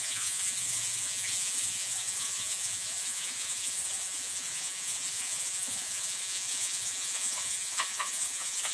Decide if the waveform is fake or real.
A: fake